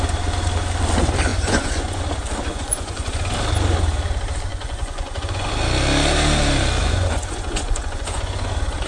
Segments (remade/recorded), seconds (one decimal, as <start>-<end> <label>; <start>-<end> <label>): 0.0-1.3 recorded; 1.3-2.0 remade; 2.0-2.5 recorded; 2.5-3.2 remade; 3.2-4.5 recorded; 4.5-5.5 remade; 5.5-6.8 recorded; 6.8-8.5 remade; 8.5-8.9 recorded

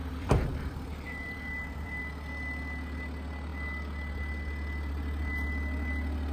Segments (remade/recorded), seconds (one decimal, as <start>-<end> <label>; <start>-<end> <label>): 0.0-2.0 remade; 2.0-6.3 recorded